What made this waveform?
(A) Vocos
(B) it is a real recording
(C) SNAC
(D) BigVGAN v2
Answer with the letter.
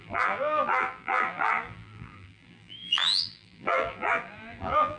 D